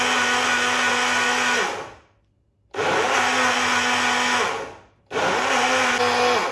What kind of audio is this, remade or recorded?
recorded